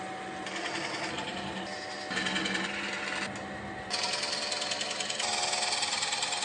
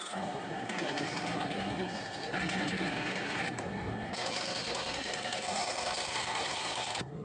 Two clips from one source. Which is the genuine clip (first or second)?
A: first